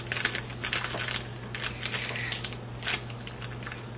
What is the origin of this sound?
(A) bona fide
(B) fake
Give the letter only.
A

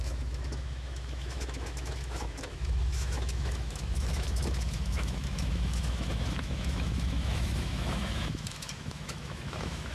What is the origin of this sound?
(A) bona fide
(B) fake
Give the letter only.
B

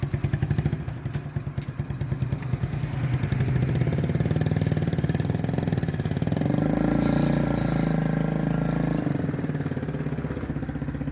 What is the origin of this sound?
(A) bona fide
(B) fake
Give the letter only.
A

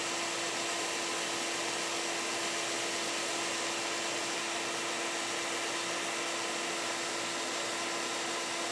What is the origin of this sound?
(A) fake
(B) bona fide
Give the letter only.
B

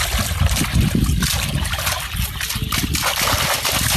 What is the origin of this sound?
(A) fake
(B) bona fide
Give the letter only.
B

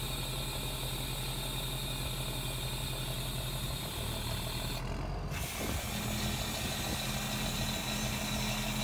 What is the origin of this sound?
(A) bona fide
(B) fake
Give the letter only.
A